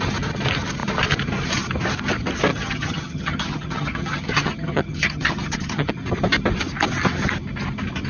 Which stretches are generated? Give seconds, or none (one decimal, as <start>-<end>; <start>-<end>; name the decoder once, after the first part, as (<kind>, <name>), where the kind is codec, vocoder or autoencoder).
2.5-5.9 (vocoder, HiFi-GAN)